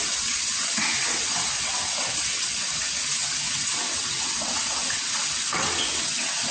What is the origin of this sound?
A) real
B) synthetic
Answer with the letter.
B